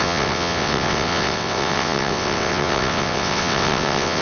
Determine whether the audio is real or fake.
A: fake